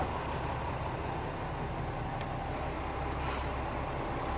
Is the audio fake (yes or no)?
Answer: no